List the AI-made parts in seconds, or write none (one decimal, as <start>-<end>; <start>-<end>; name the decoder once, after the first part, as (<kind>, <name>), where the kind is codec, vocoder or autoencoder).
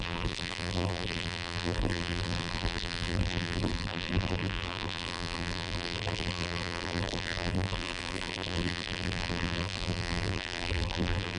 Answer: 0.0-11.4 (vocoder, BigVGAN v2)